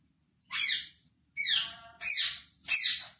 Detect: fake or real real